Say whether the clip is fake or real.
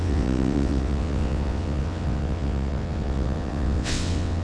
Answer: fake